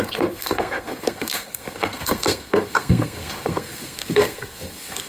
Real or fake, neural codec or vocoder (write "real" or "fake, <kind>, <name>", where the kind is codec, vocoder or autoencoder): fake, codec, SNAC